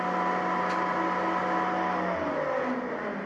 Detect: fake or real real